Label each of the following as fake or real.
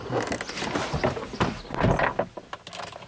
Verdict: real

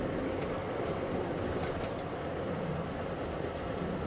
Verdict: real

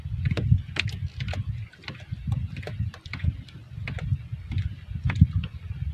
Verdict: real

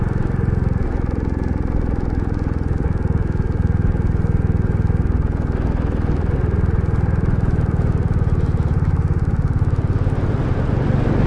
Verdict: real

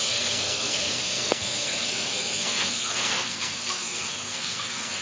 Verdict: fake